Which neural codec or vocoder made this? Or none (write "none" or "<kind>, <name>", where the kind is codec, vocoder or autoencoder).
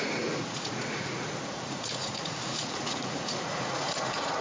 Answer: vocoder, Vocos